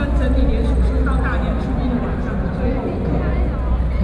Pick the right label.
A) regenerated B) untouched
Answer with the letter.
B